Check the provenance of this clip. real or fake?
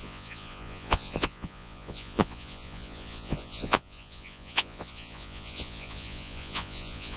fake